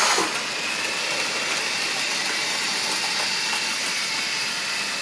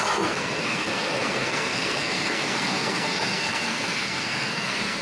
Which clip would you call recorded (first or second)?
first